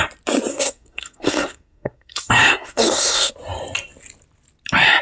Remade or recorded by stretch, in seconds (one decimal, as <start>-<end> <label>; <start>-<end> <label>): 0.0-0.5 recorded; 0.5-3.3 remade; 3.3-5.0 recorded